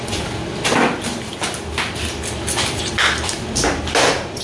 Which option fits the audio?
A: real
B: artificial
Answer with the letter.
A